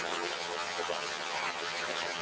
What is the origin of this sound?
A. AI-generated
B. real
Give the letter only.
A